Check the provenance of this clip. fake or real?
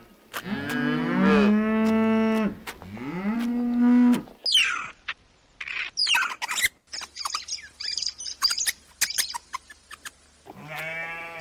real